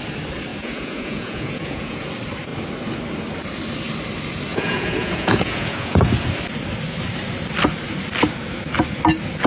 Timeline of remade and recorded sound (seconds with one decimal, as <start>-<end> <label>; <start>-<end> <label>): 0.0-0.5 recorded; 0.5-2.1 remade; 2.1-4.5 recorded; 4.5-6.1 remade; 6.1-9.5 recorded